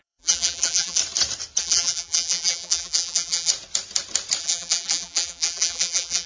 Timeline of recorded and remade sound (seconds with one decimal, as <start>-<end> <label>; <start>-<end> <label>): 0.0-1.0 remade; 1.0-1.6 recorded; 1.6-3.5 remade; 3.5-4.4 recorded; 4.4-6.3 remade